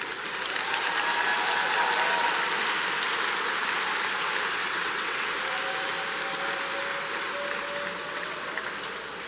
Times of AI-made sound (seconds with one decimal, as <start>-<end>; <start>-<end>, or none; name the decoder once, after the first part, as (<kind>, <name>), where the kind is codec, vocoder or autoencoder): 4.6-5.4 (vocoder, WaveNeXt); 8.0-8.5